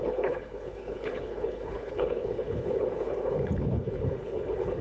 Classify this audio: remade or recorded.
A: remade